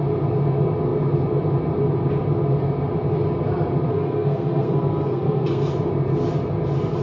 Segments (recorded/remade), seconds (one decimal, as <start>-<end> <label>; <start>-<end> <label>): 0.0-3.9 recorded; 3.9-5.7 remade; 5.7-7.0 recorded